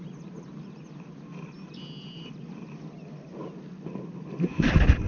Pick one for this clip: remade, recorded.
recorded